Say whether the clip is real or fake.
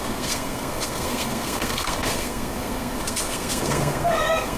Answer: fake